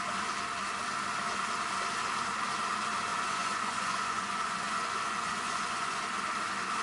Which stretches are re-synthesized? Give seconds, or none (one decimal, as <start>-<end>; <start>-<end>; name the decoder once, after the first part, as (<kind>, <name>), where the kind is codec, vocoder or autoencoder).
3.1-6.0 (vocoder, Vocos)